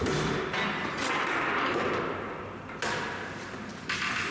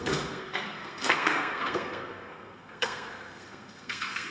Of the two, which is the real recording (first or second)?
first